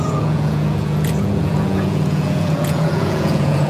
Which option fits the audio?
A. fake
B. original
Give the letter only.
A